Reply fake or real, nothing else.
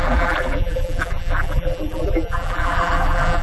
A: fake